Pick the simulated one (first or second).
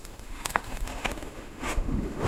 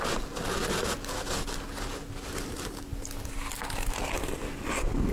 first